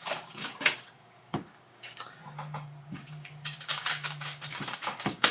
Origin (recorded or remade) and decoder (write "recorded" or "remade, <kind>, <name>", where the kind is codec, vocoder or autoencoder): remade, codec, DAC